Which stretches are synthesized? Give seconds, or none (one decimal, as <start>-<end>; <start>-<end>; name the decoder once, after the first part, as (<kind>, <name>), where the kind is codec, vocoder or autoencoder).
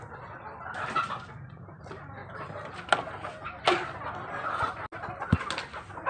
none